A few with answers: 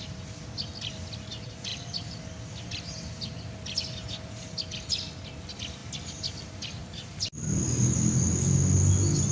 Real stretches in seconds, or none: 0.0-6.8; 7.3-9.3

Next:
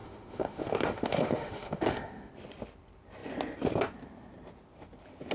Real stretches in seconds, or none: 2.3-5.3

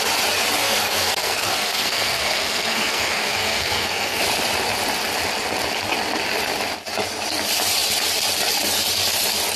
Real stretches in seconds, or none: 0.0-0.6; 4.2-9.6